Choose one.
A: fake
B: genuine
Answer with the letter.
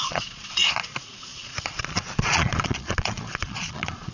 A